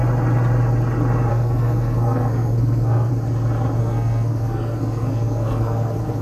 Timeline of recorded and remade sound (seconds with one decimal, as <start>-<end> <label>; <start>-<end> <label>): 0.0-1.3 recorded; 1.3-3.1 remade; 3.1-3.8 recorded; 3.8-6.2 remade

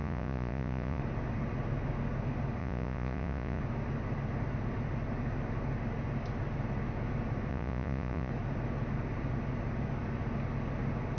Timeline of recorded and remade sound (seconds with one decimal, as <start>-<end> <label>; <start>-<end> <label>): 0.0-1.0 remade; 1.0-2.6 recorded; 2.6-3.6 remade; 3.6-7.5 recorded; 7.5-8.3 remade; 8.3-11.2 recorded

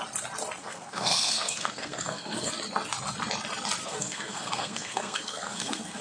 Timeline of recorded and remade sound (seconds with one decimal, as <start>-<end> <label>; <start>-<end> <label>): 0.0-0.6 recorded; 0.6-2.5 remade; 2.5-3.8 recorded; 3.8-6.0 remade

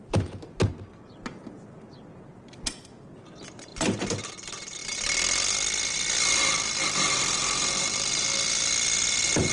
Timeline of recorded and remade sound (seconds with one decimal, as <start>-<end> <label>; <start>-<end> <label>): 0.0-3.7 recorded; 3.7-4.3 remade; 4.3-9.5 recorded

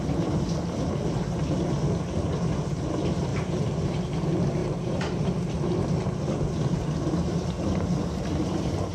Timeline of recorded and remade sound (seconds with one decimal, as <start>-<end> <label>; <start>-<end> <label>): 0.0-3.3 recorded; 3.3-4.0 remade; 4.0-4.6 recorded; 4.6-5.2 remade; 5.2-8.9 recorded

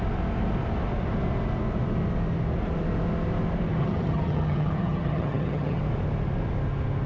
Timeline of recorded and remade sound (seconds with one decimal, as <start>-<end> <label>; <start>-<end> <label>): 0.0-3.8 recorded; 3.8-5.8 remade; 5.8-7.1 recorded

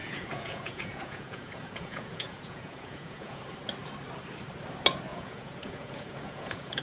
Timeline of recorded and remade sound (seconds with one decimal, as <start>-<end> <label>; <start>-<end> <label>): 0.0-3.4 remade; 3.4-5.1 recorded; 5.1-6.8 remade

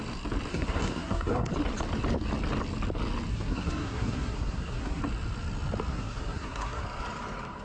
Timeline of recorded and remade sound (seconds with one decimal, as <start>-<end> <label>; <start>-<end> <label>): 0.0-0.5 recorded; 0.5-1.5 remade; 1.5-3.3 recorded; 3.3-5.0 remade; 5.0-5.9 recorded; 5.9-6.8 remade; 6.8-7.6 recorded